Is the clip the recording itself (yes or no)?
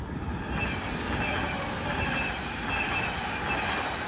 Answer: yes